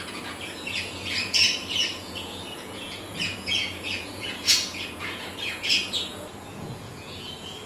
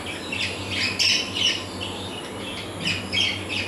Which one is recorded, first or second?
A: second